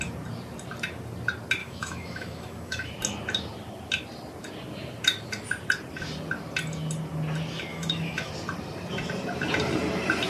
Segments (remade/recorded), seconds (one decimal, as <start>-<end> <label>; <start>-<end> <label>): 0.0-1.6 recorded; 1.6-2.9 remade; 2.9-7.7 recorded; 7.7-8.3 remade; 8.3-10.3 recorded